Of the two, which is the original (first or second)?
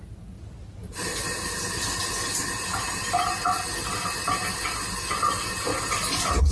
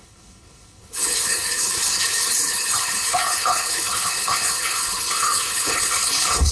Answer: first